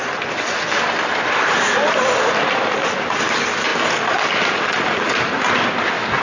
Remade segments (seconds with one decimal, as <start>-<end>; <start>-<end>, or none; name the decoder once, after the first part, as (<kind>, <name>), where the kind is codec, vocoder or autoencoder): none